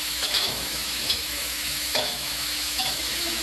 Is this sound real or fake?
fake